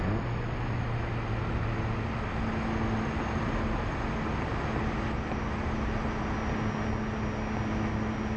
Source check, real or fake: real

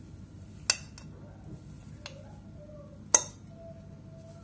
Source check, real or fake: real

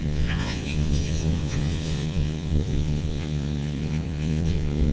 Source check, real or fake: fake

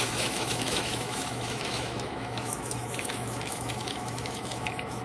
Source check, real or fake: fake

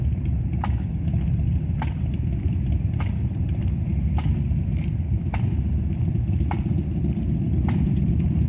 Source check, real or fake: real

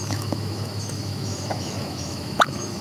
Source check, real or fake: fake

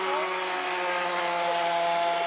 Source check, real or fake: real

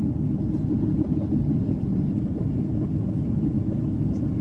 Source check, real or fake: real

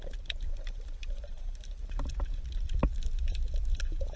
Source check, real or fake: fake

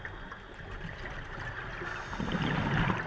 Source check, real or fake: real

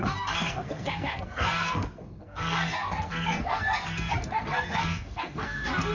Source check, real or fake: fake